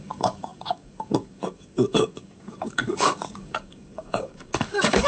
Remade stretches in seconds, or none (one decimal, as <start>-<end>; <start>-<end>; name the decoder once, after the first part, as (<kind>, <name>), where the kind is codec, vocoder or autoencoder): 0.0-5.1 (codec, DAC)